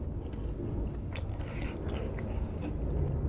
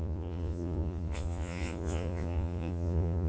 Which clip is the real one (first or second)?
first